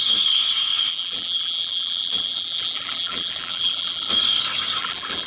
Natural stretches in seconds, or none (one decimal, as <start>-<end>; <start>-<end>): 0.0-0.9; 4.1-4.8

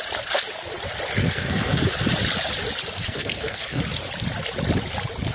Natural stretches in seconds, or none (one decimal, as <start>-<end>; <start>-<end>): 0.0-1.2; 1.8-3.0; 3.8-5.3

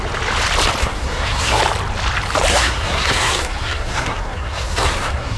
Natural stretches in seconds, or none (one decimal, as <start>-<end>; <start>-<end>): 0.0-0.8; 1.6-2.5